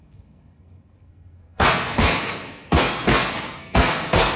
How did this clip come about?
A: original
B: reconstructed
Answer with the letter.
B